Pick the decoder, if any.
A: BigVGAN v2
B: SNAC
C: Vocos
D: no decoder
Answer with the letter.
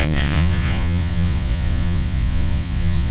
C